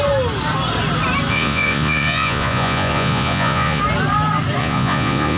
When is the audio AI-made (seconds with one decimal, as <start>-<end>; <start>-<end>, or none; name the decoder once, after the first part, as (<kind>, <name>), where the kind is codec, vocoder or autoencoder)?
1.3-3.8 (vocoder, Vocos); 4.6-5.4